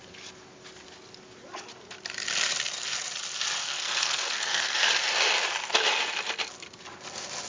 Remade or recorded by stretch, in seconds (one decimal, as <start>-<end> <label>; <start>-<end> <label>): 0.0-3.6 recorded; 3.6-4.9 remade; 4.9-7.5 recorded